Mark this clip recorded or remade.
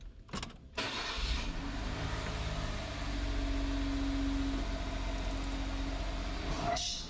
recorded